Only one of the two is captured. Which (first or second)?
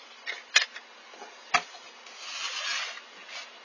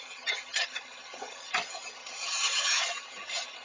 first